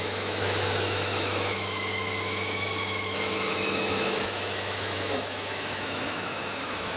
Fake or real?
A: fake